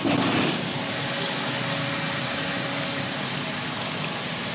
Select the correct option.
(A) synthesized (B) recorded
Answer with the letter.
B